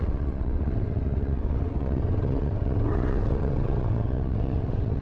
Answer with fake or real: fake